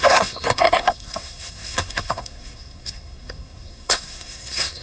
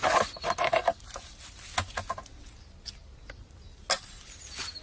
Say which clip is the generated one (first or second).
first